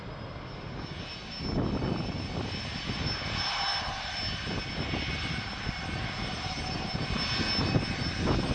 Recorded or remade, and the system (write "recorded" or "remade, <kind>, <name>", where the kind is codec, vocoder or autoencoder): recorded